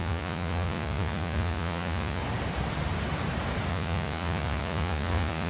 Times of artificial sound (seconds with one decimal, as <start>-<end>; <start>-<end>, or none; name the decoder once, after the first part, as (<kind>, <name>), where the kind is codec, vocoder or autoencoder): 0.0-2.2 (vocoder, Vocos); 3.7-5.5